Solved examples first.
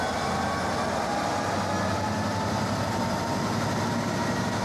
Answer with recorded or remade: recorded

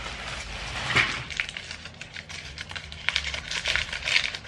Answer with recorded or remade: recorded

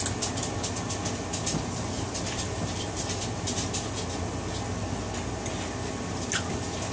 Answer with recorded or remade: recorded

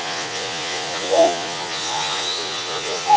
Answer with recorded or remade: remade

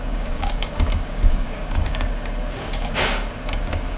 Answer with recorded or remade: remade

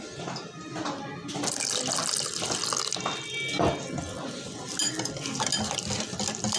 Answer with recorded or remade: recorded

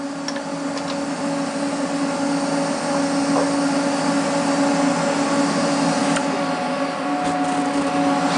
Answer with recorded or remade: recorded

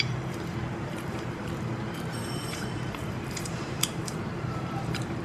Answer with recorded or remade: remade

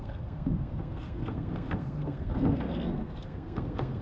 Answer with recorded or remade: remade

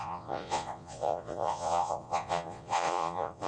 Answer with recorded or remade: remade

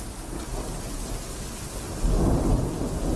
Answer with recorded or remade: recorded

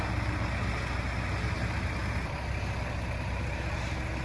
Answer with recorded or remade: recorded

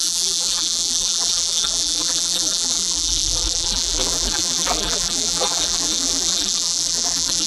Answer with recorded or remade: remade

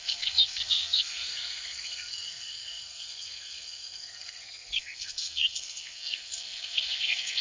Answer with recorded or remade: remade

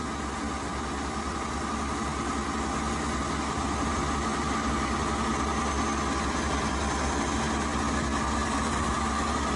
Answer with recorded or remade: recorded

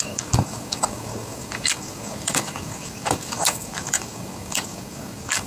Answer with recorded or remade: remade